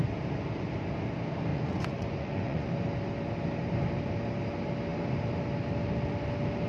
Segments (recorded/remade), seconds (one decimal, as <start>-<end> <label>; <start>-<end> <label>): 0.0-1.5 recorded; 1.5-2.7 remade; 2.7-6.7 recorded